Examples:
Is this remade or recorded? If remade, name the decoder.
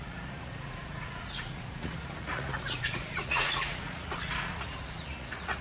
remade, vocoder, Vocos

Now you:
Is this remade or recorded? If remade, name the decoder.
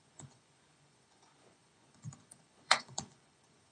remade, vocoder, Vocos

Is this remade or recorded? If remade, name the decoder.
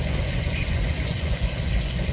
remade, vocoder, Vocos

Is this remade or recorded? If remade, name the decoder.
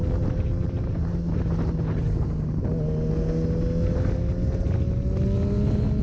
recorded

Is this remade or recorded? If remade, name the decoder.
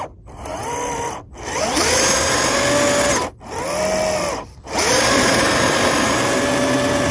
recorded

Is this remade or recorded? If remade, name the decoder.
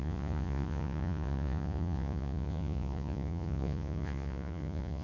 remade, vocoder, Vocos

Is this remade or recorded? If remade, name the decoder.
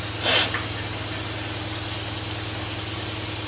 recorded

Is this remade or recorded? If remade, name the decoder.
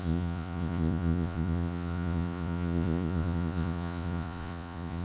remade, vocoder, Vocos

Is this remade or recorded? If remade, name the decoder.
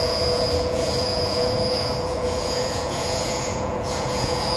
remade, vocoder, Vocos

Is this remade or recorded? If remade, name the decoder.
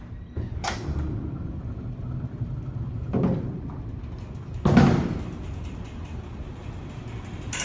recorded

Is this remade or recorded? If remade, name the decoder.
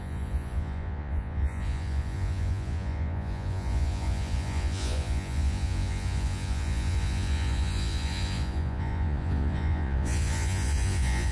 remade, vocoder, Vocos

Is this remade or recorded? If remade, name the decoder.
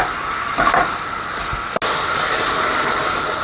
recorded